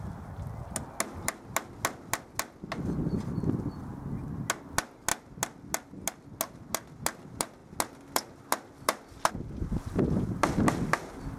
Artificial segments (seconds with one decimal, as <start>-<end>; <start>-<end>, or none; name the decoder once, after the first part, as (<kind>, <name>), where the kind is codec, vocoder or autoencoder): none